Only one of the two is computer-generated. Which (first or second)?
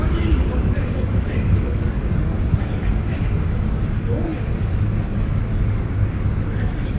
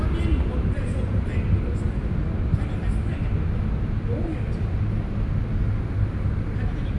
first